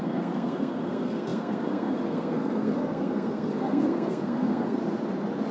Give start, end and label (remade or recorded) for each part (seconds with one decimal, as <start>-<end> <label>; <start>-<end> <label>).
0.0-4.8 remade; 4.8-5.5 recorded